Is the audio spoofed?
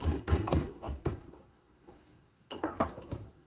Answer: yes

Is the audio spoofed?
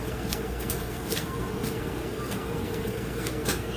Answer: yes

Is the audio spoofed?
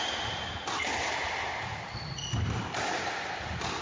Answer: no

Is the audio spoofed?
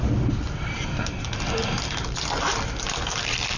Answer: no